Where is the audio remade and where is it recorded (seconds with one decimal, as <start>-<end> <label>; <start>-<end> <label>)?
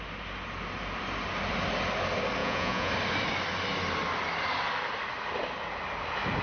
0.0-2.4 recorded; 2.4-2.9 remade; 2.9-6.4 recorded